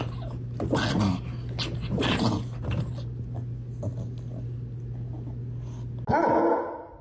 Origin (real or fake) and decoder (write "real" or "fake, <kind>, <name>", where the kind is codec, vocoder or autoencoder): real